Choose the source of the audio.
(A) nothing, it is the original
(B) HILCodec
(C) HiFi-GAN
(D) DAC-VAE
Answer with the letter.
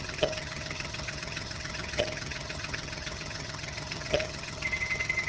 C